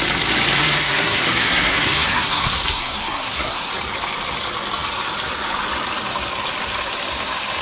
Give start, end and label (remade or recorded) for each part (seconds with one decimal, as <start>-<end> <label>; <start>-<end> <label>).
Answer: 0.0-0.6 recorded; 0.6-3.7 remade; 3.7-7.6 recorded